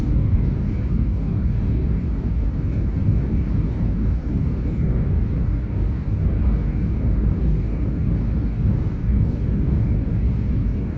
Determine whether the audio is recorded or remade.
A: remade